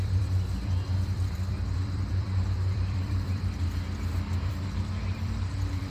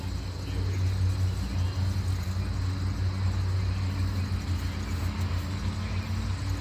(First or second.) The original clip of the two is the second